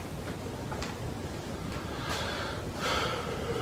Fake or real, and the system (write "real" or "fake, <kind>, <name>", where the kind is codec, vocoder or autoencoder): real